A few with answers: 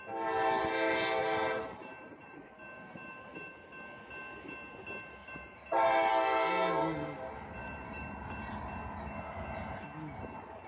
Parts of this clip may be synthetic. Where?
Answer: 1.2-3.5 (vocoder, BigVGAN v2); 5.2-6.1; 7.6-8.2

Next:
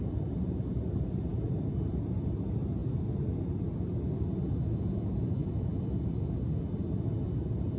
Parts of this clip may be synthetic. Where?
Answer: none

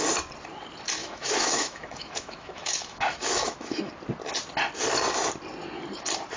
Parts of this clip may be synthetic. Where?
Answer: 1.0-3.9 (autoencoder, DAC-VAE)

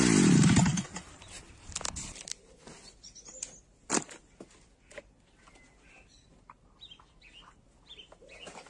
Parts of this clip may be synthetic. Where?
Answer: 0.6-1.7 (vocoder, BigVGAN v2)